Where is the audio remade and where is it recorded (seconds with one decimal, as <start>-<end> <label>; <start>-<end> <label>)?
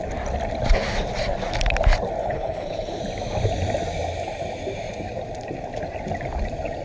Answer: 0.0-2.2 recorded; 2.2-3.0 remade; 3.0-6.8 recorded